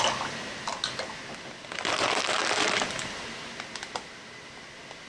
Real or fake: real